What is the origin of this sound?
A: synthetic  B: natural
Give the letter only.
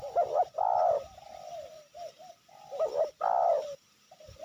B